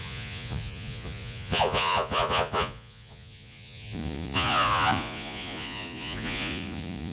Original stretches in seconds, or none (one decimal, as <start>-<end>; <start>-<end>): none